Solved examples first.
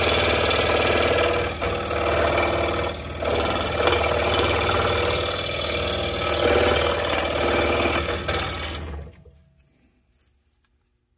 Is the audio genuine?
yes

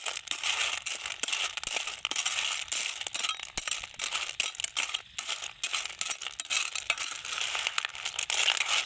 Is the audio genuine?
yes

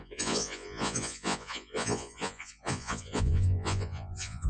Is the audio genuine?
no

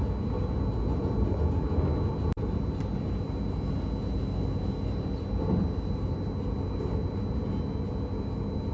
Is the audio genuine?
yes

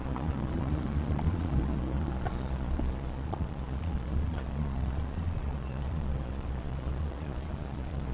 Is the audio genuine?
no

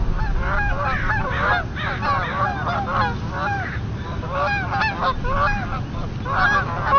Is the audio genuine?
yes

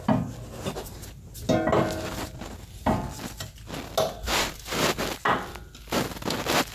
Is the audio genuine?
yes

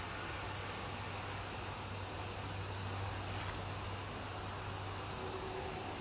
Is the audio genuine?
yes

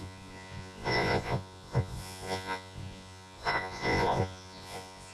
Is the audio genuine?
no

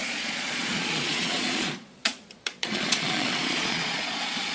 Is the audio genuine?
no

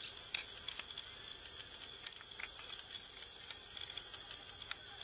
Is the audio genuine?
yes